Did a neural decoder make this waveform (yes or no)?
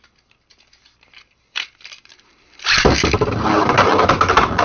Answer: no